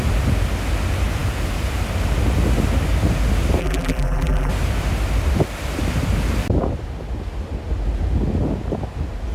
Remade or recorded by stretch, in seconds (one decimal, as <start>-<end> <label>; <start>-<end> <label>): 0.0-3.6 recorded; 3.6-4.5 remade; 4.5-9.3 recorded